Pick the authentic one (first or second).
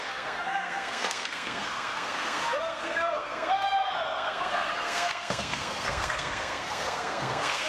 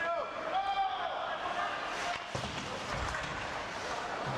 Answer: second